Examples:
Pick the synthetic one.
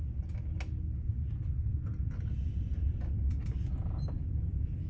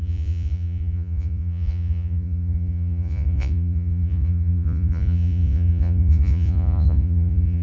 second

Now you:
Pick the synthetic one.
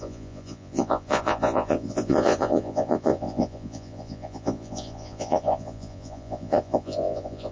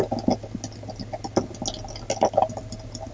first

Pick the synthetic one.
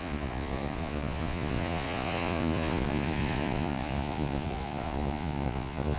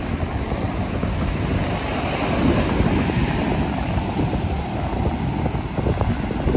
first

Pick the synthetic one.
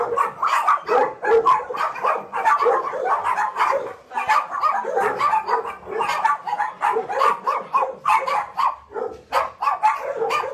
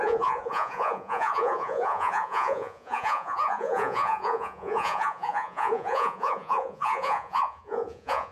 second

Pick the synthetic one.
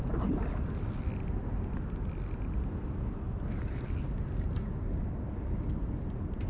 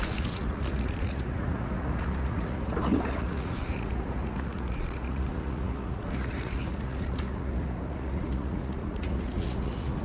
second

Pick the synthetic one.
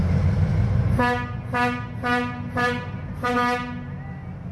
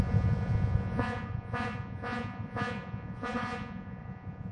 second